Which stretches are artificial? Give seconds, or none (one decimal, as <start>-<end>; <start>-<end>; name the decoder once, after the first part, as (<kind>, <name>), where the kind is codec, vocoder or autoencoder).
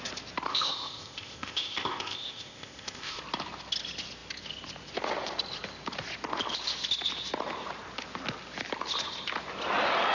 0.5-3.2 (codec, ZipCodec)